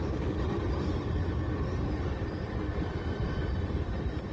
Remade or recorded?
recorded